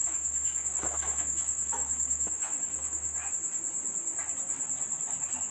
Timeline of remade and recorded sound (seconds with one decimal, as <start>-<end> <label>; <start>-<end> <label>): 0.0-3.3 remade; 3.3-5.5 recorded